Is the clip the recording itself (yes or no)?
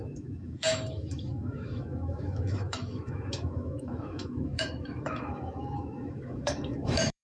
no